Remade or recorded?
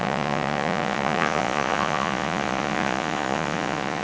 remade